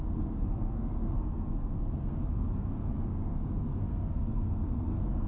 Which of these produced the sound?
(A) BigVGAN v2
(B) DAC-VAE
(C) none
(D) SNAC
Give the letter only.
D